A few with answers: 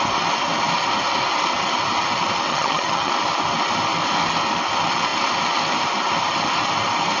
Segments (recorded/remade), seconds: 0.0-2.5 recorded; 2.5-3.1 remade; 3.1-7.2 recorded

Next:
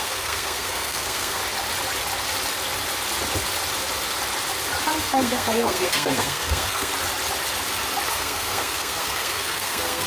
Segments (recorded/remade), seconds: 0.0-1.4 remade; 1.4-5.0 recorded; 5.0-6.9 remade; 6.9-8.1 recorded; 8.1-10.1 remade

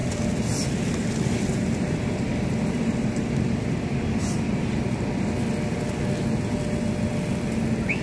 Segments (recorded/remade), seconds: 0.0-8.0 recorded

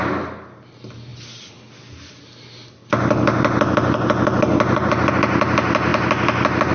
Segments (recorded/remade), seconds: 0.0-6.7 recorded

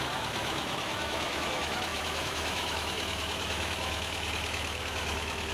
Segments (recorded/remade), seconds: 0.0-5.5 remade